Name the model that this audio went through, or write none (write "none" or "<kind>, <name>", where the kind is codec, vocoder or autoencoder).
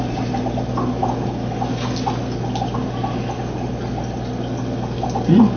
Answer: none